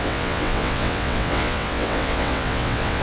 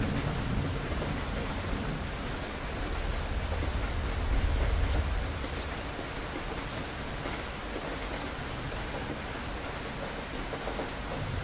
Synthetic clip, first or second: first